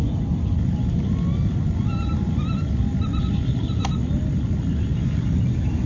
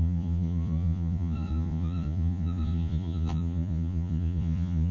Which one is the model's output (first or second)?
second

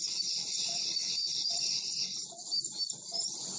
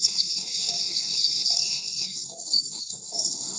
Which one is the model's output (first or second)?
second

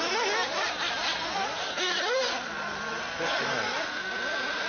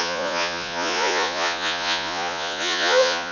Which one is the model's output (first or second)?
second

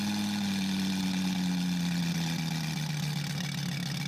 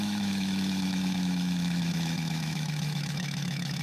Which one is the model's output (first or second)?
second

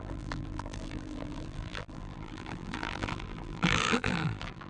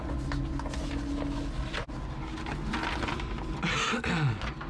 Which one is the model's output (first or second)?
first